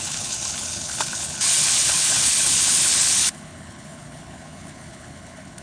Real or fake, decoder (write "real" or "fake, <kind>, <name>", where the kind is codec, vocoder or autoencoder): fake, codec, HILCodec